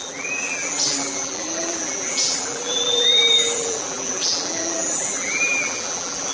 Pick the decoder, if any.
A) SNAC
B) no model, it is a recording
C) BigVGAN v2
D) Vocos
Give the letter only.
C